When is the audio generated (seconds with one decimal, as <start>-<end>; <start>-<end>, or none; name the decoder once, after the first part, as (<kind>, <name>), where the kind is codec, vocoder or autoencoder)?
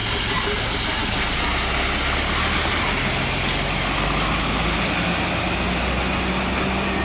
none